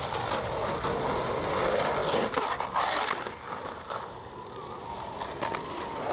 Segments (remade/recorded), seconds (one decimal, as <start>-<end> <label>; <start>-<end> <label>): 0.0-6.1 recorded